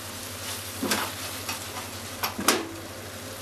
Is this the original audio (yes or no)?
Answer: yes